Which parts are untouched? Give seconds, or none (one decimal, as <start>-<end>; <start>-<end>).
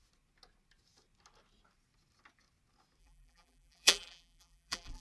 0.0-3.0